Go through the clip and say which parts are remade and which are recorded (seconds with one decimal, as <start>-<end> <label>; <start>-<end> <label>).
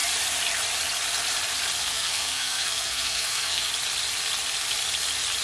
0.0-1.8 recorded; 1.8-3.7 remade; 3.7-5.4 recorded